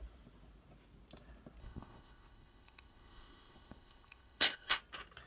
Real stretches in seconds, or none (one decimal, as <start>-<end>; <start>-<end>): 0.0-1.6; 4.8-5.3